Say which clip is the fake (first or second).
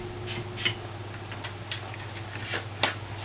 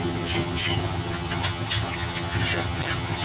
second